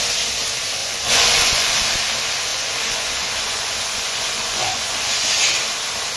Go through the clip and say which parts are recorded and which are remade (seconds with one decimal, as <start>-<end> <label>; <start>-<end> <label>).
0.0-0.8 recorded; 0.8-1.7 remade; 1.7-2.5 recorded; 2.5-5.3 remade; 5.3-6.2 recorded